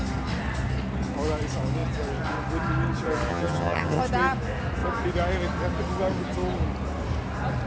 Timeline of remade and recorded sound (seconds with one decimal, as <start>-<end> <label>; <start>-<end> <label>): 0.0-3.3 recorded; 3.3-4.0 remade; 4.0-7.7 recorded